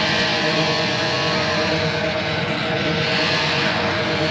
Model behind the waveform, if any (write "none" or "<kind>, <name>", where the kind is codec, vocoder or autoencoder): vocoder, Vocos